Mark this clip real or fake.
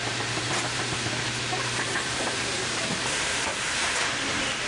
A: fake